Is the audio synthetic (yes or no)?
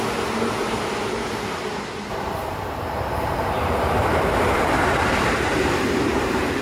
yes